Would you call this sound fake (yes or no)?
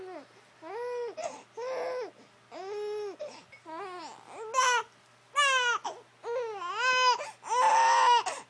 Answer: no